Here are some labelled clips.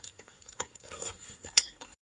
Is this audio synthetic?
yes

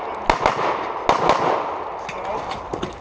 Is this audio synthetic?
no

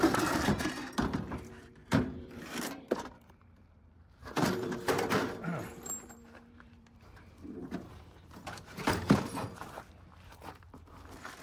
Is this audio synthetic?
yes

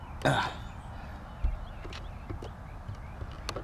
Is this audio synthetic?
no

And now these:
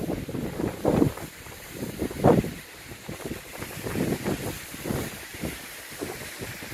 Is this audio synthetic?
yes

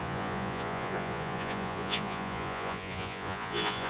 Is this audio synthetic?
yes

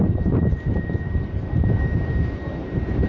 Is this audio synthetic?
yes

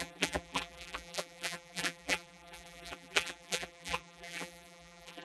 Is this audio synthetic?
yes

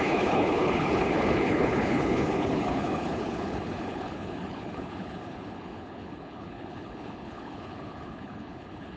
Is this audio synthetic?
yes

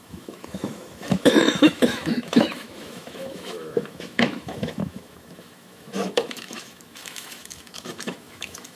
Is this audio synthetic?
yes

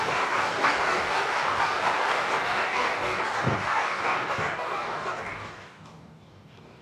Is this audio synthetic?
yes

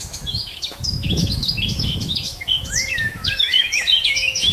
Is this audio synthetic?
yes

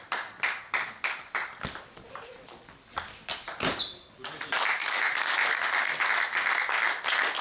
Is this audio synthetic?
no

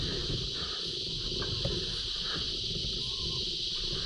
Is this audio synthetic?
no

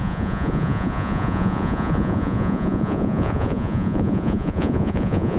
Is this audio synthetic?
yes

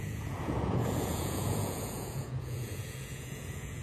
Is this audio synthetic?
yes